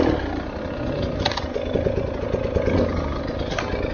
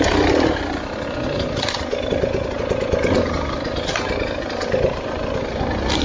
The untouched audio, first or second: first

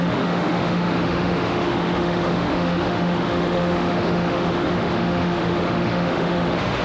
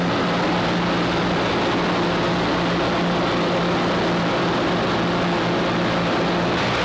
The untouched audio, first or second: second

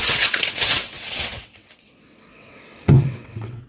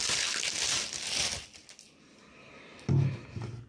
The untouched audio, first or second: second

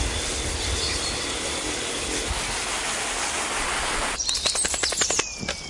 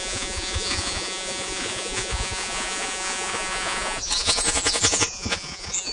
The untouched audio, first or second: first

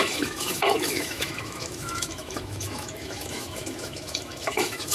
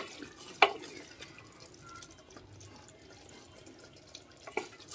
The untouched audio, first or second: second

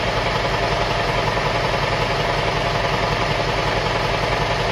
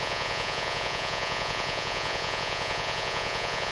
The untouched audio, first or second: first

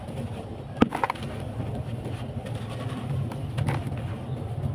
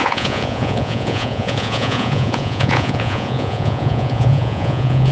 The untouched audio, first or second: first